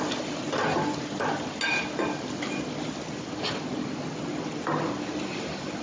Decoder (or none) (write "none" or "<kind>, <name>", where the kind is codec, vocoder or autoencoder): none